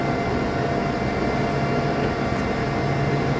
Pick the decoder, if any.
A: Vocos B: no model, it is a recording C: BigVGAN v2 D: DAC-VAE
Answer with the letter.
B